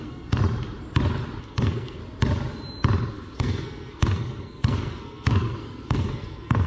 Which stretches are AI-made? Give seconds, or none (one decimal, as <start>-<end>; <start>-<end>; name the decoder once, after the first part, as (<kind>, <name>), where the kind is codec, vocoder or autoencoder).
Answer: 0.0-0.4 (codec, SNAC); 1.4-2.0; 3.1-6.7